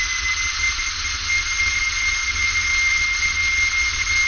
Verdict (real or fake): real